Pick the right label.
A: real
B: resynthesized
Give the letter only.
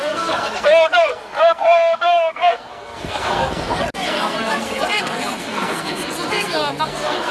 B